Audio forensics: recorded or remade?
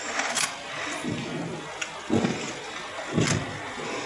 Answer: recorded